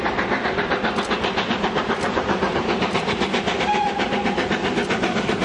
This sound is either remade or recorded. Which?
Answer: recorded